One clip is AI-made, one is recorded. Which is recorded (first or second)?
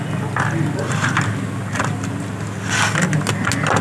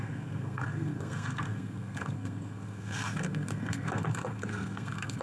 first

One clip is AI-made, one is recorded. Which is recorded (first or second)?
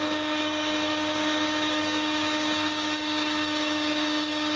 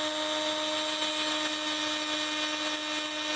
second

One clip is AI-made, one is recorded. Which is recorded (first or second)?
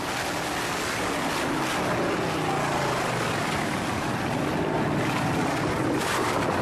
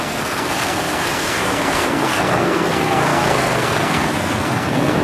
first